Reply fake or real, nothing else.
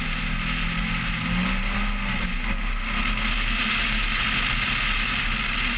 real